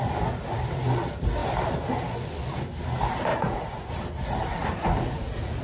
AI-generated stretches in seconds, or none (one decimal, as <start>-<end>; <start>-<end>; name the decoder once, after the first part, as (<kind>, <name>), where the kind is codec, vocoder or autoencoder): 3.3-3.9 (vocoder, Vocos); 4.5-5.6